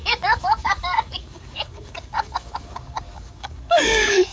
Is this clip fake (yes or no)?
yes